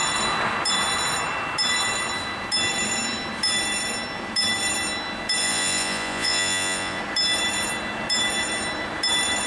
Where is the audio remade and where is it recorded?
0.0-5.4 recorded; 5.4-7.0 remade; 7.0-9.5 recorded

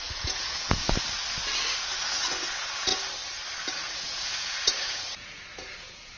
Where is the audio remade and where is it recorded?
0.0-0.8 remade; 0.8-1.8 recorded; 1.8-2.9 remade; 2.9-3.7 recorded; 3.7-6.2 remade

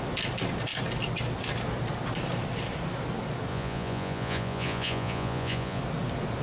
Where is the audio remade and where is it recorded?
0.0-3.5 recorded; 3.5-5.8 remade; 5.8-6.4 recorded